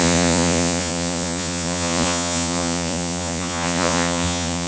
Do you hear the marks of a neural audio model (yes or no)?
yes